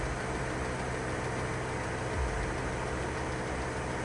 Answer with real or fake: real